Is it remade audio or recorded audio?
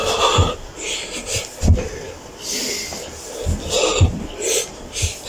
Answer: recorded